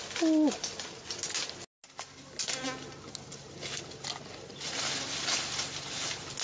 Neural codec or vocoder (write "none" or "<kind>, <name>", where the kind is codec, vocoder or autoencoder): none